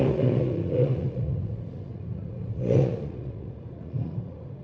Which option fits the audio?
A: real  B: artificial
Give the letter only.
B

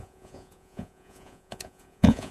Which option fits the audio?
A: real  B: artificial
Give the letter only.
B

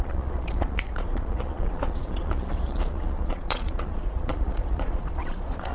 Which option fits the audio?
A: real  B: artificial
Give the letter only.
B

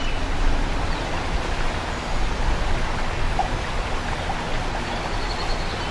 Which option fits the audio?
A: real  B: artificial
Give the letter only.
A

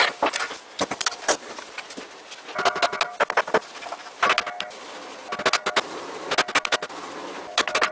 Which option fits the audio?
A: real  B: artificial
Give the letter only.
A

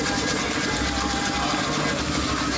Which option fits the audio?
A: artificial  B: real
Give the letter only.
B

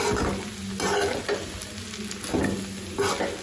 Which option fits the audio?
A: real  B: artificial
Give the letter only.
A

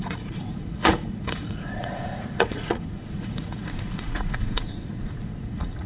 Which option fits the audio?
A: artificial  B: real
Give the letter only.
A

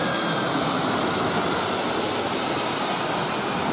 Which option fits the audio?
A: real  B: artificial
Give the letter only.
A